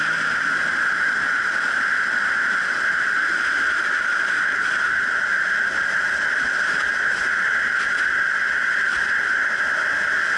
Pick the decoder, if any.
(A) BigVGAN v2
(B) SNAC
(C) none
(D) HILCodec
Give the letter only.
C